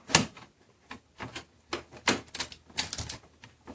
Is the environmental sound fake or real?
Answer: real